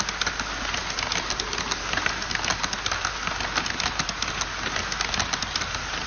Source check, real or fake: real